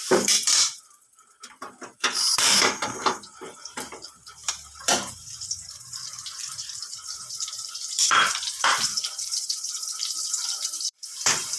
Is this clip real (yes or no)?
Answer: no